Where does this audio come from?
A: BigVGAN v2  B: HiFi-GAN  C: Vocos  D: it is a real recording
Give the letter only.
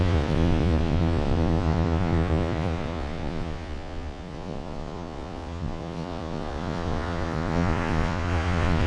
C